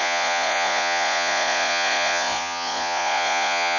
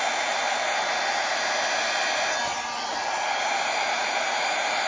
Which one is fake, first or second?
first